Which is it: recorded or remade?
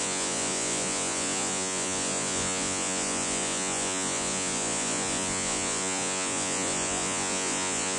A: remade